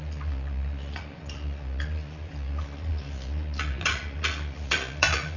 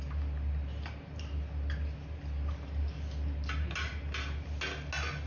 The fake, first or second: first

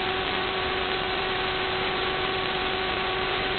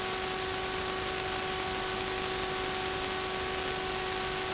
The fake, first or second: first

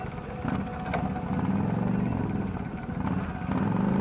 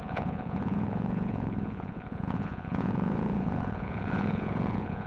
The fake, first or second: second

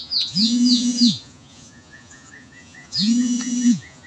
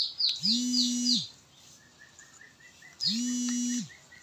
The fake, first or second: first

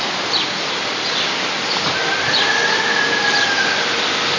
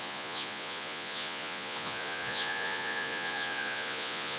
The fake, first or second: second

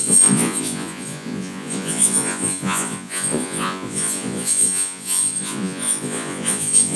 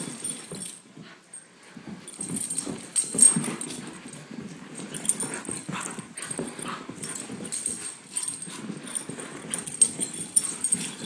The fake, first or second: first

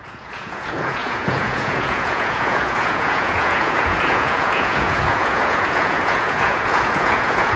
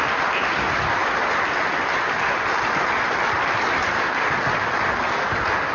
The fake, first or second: first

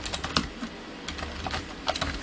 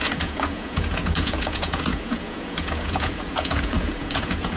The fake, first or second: second